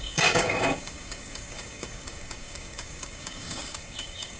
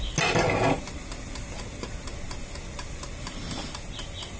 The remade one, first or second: first